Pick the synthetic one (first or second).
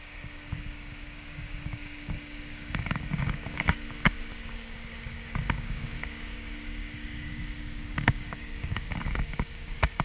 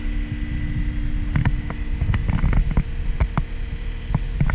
first